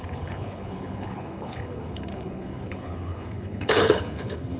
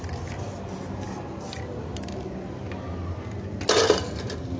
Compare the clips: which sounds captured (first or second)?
second